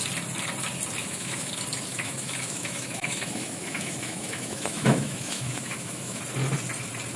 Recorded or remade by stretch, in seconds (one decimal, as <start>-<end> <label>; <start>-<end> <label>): 0.0-1.0 recorded; 1.0-1.5 remade; 1.5-1.9 recorded; 1.9-6.2 remade; 6.2-7.2 recorded